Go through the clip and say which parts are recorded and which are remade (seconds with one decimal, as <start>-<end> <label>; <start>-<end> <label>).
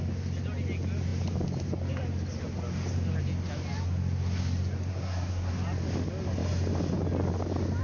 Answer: 0.0-4.9 recorded; 4.9-5.5 remade; 5.5-7.8 recorded